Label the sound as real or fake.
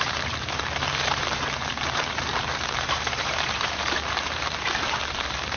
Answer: fake